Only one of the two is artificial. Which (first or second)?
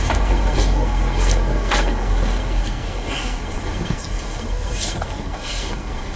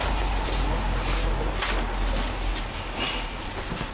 first